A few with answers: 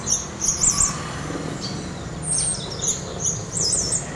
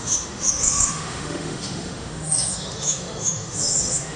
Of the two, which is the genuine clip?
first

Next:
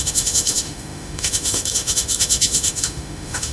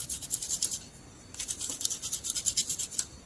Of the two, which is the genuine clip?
second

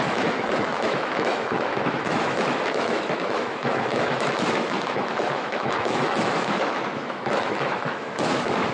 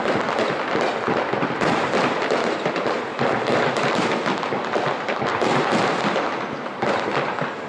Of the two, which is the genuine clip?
second